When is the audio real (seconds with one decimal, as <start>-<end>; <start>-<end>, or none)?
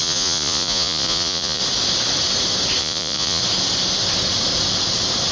1.6-2.8; 3.4-5.3